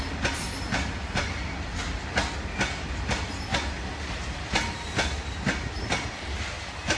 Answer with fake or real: real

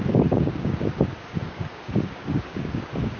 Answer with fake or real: fake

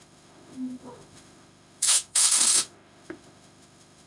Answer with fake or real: fake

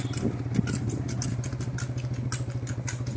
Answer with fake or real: real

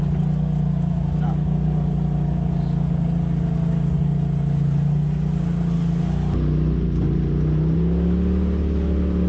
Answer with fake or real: real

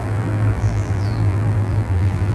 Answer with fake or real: fake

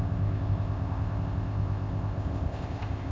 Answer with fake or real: fake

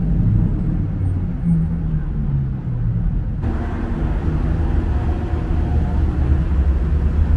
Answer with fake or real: real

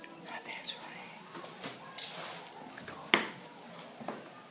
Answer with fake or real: fake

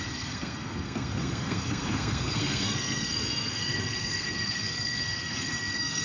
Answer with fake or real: fake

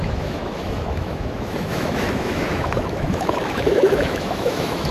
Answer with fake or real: fake